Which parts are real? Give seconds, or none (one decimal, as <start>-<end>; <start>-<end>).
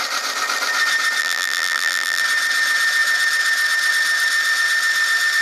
0.0-1.2; 2.2-5.4